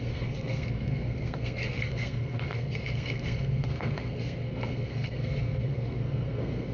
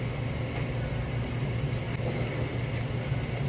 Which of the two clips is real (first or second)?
second